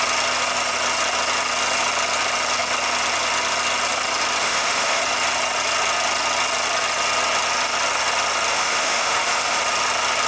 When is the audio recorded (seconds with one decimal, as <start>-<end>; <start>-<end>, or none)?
0.0-4.4; 5.0-8.5; 9.6-10.3